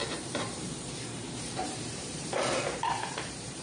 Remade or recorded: remade